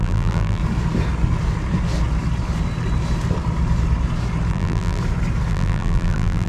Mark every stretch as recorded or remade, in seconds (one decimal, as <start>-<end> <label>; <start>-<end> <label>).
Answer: 0.0-0.6 remade; 0.6-4.5 recorded; 4.5-5.0 remade; 5.0-5.5 recorded; 5.5-6.5 remade